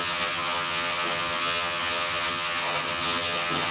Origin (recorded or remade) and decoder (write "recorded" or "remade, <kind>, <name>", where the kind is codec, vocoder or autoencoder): remade, vocoder, HiFi-GAN